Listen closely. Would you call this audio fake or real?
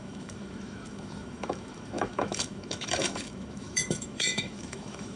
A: fake